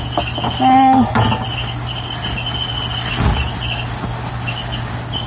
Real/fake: real